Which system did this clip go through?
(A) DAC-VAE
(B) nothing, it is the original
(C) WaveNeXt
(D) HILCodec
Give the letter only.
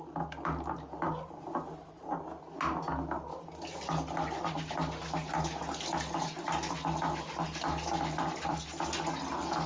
B